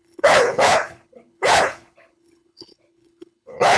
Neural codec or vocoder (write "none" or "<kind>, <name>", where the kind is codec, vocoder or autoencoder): codec, HILCodec